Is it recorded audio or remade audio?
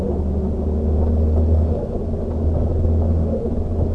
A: recorded